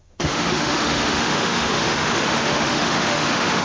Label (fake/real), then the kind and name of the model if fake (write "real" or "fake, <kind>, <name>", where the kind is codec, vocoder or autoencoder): fake, autoencoder, DAC-VAE